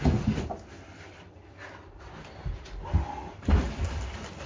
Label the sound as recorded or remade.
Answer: recorded